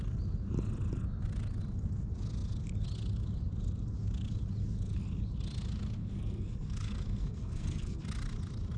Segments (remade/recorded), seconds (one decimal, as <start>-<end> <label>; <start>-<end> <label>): 0.0-6.0 recorded; 6.0-8.0 remade; 8.0-8.8 recorded